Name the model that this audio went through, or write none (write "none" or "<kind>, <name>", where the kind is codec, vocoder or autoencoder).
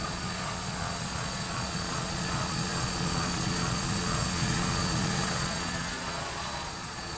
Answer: vocoder, Vocos